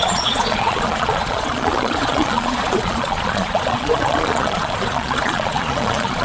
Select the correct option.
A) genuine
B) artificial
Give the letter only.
B